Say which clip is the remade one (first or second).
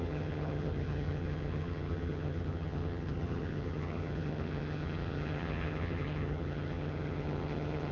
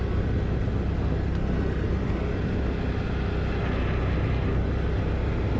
first